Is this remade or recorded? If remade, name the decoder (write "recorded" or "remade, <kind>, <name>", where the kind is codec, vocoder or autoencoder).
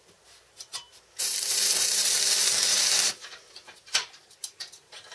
remade, vocoder, BigVGAN v2